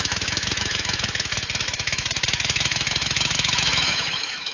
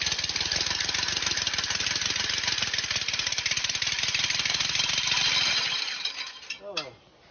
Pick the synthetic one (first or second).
first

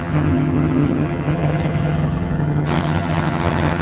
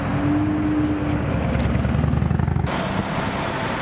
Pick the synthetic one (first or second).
first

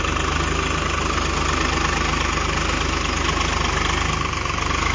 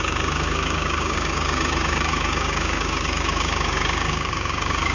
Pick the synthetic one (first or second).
second